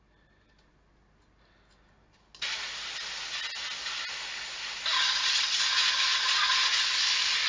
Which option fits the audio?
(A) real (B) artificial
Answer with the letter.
A